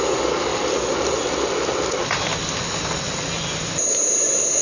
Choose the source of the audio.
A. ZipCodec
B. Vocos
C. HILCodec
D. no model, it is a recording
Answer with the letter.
D